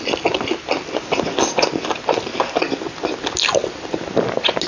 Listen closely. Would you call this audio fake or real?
real